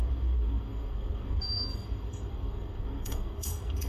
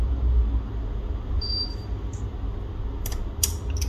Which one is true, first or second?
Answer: second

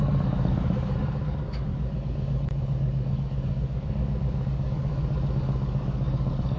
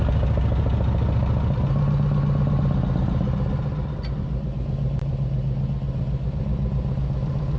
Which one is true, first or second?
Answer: second